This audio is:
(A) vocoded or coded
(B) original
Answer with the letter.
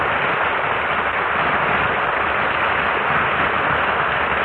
B